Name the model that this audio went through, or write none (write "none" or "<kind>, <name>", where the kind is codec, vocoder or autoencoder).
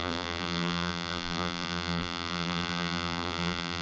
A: vocoder, BigVGAN v2